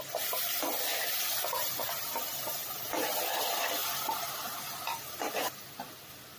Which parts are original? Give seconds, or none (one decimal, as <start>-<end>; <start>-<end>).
0.0-6.4